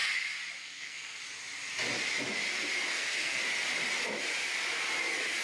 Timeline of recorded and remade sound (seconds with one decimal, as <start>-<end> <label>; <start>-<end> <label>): 0.0-0.6 recorded; 0.6-1.2 remade; 1.2-2.9 recorded; 2.9-3.4 remade; 3.4-5.4 recorded